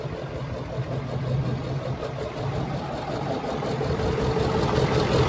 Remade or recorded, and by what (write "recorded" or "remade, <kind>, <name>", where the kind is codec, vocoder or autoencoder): recorded